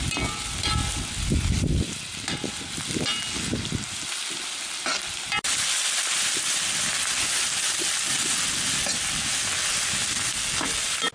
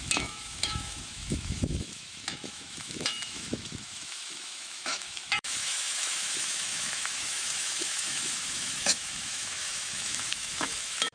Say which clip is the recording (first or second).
first